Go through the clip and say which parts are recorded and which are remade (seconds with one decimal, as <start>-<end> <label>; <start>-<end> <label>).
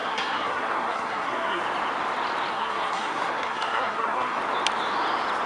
0.0-1.6 remade; 1.6-2.5 recorded; 2.5-4.4 remade; 4.4-5.5 recorded